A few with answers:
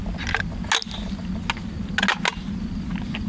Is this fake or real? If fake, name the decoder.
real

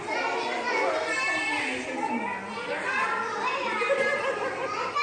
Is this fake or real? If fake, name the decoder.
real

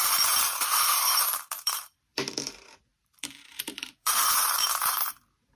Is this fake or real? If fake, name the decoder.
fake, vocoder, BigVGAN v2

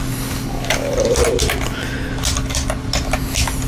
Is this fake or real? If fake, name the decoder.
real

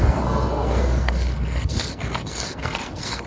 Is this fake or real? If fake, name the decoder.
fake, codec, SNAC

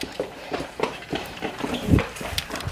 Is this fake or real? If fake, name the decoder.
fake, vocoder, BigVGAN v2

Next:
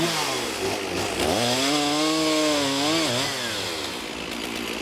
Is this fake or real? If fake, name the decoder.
real